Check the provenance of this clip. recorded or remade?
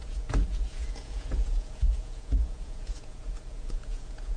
remade